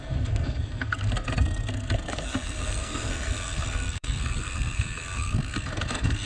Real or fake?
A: fake